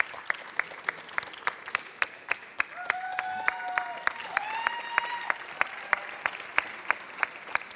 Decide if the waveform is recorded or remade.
recorded